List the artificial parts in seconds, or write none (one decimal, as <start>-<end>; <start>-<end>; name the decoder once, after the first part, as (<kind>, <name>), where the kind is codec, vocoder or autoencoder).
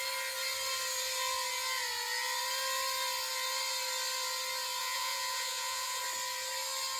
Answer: 4.8-6.0 (vocoder, Vocos)